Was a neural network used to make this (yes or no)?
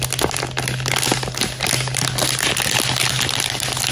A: no